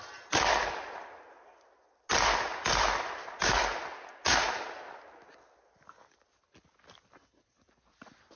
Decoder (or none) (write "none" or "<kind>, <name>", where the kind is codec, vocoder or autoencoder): none